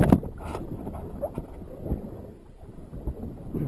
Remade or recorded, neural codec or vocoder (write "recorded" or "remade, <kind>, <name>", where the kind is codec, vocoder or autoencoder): remade, vocoder, BigVGAN v2